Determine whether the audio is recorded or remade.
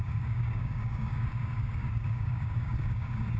remade